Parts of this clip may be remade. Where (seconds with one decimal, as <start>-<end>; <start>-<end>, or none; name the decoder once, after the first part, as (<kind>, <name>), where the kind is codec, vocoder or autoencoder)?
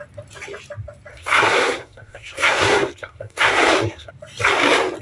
1.1-4.1 (codec, SNAC)